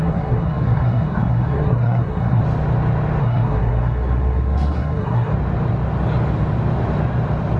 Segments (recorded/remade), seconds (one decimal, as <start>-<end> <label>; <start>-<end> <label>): 0.0-2.4 remade; 2.4-3.2 recorded; 3.2-5.3 remade; 5.3-7.6 recorded